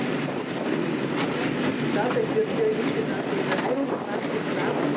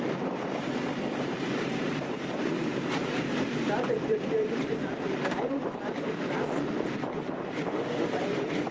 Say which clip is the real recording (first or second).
first